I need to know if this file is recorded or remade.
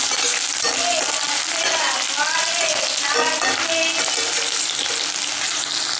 recorded